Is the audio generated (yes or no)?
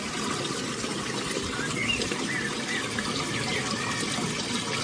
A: no